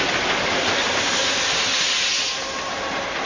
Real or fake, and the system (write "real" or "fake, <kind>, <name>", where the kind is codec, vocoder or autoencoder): real